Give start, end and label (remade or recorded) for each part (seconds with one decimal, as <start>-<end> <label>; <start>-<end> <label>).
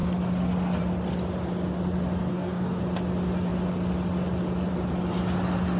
0.0-2.3 recorded; 2.3-2.8 remade; 2.8-5.8 recorded